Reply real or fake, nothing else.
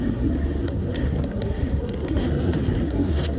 fake